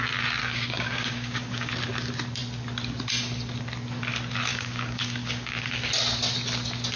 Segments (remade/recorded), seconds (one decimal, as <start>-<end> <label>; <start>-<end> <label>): 0.0-0.4 recorded; 0.4-1.7 remade; 1.7-4.5 recorded; 4.5-5.9 remade; 5.9-7.0 recorded